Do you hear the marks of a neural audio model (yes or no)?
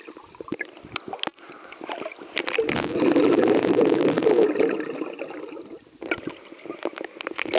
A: no